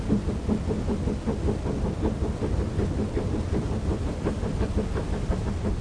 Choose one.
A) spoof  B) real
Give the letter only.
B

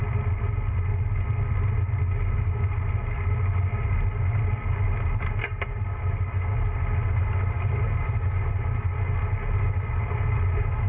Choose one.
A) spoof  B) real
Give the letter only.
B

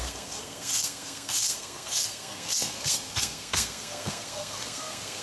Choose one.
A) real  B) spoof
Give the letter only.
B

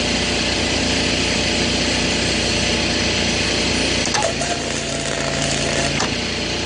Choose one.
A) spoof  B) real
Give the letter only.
B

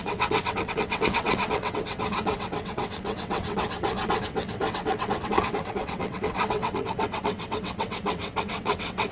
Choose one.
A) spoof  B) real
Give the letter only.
A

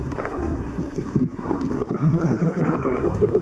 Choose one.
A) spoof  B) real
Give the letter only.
A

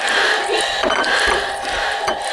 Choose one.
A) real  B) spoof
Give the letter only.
A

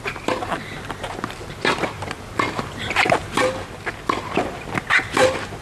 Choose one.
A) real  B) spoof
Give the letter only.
A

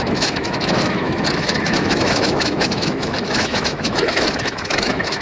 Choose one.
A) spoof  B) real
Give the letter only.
A